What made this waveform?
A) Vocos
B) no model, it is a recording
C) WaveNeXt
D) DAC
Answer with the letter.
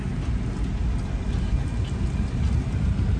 B